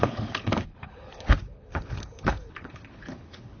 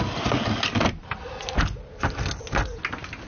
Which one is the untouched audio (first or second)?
second